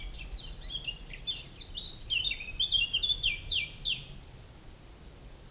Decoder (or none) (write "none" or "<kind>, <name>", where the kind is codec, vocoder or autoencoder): none